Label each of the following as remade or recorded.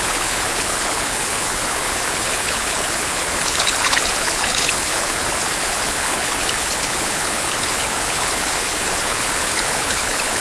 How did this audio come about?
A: remade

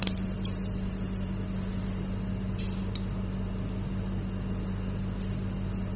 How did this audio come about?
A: recorded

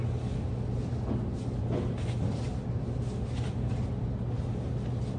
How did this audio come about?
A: recorded